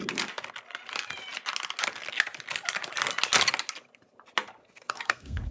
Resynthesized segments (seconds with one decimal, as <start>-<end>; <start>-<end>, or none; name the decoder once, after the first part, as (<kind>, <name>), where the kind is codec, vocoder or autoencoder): 4.6-5.5 (codec, SNAC)